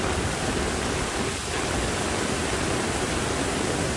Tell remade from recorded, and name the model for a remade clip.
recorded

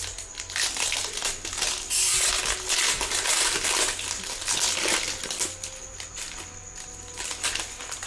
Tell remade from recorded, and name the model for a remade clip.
recorded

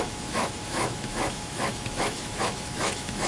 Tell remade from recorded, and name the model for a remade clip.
remade, autoencoder, DAC-VAE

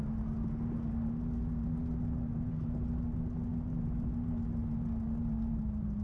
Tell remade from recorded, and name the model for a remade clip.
recorded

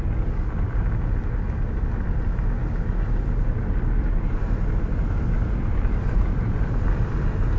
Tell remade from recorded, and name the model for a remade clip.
recorded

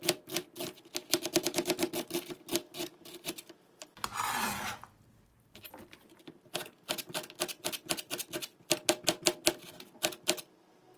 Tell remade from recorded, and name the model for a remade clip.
recorded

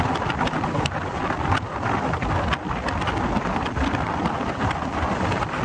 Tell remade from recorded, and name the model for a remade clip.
recorded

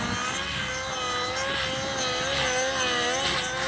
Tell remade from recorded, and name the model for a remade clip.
recorded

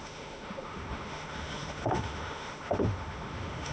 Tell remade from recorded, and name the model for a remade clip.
remade, autoencoder, DAC-VAE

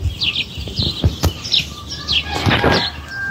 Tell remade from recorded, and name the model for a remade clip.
recorded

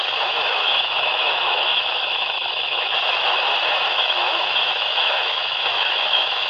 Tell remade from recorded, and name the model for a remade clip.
remade, autoencoder, DAC-VAE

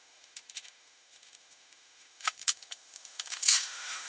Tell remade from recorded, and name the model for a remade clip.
remade, autoencoder, DAC-VAE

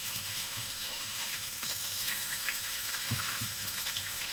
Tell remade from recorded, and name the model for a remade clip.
remade, autoencoder, DAC-VAE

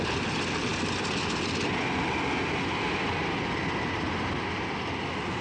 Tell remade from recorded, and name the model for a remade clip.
recorded